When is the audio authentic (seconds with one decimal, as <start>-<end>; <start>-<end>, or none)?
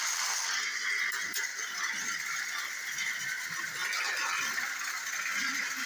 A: 0.0-3.8; 4.8-5.9